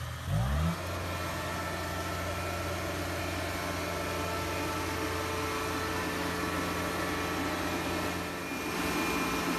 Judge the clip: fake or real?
real